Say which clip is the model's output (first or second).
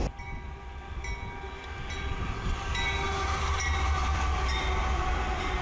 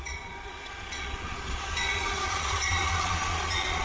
second